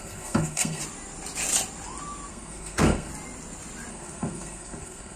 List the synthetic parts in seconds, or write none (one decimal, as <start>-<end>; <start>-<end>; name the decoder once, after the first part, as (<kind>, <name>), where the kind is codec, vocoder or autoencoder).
0.0-0.8 (codec, SNAC); 2.3-3.1; 3.9-5.2